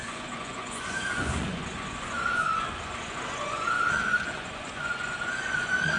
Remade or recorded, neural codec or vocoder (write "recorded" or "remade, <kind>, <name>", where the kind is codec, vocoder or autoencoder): remade, vocoder, Vocos